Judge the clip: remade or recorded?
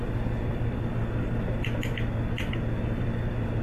remade